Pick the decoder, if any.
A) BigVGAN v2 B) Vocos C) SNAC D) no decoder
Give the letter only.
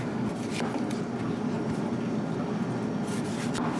D